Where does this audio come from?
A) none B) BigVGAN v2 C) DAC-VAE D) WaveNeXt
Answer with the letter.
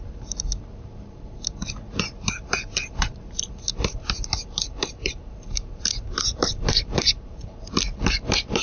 B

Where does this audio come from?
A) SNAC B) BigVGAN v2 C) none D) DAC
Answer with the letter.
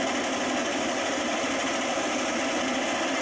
B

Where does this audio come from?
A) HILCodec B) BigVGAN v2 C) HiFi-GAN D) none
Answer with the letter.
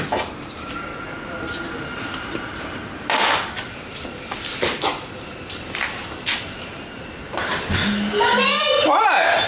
B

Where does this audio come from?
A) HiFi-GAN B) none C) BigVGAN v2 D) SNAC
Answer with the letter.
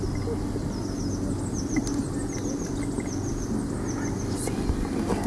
B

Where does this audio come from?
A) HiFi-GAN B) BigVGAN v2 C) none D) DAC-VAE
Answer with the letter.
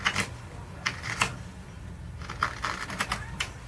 C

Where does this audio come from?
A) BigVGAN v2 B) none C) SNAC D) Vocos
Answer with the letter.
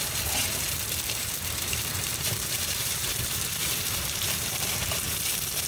A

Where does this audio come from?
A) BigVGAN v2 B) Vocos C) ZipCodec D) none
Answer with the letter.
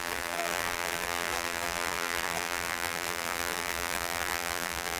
A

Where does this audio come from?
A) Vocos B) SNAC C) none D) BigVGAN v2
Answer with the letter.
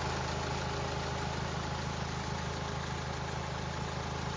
C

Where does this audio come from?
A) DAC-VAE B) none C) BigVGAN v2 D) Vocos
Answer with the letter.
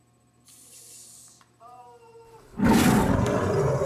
B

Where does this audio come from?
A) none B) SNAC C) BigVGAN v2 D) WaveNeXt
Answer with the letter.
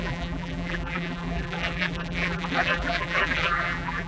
C